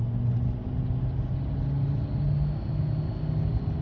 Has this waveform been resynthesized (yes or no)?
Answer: no